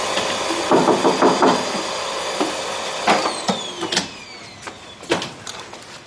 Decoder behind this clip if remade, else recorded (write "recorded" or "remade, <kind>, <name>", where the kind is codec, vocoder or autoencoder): remade, vocoder, BigVGAN v2